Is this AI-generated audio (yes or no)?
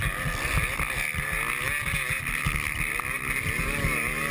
no